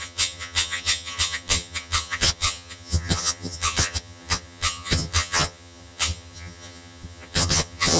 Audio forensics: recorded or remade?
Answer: remade